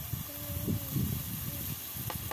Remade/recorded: recorded